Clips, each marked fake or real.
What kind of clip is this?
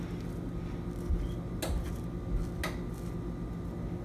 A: real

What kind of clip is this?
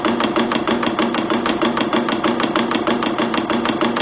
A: fake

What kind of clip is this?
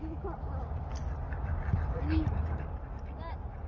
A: real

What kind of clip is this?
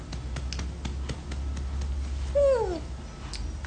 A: real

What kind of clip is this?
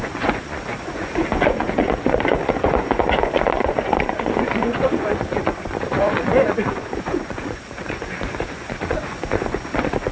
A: fake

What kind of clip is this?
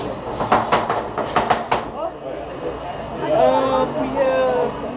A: real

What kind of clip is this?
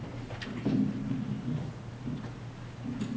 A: real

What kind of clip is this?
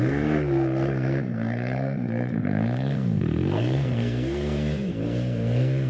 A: fake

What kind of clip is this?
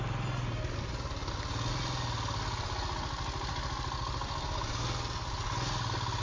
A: real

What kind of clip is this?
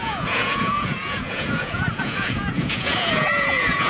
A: fake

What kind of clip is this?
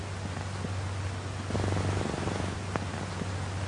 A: real